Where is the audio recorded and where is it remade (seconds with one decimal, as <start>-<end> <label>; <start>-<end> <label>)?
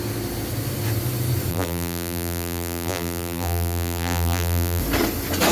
0.0-1.5 recorded; 1.5-4.8 remade; 4.8-5.5 recorded